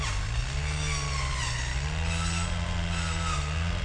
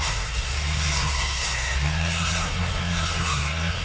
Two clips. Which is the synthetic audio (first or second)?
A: second